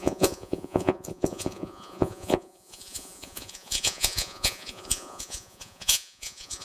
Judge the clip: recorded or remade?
remade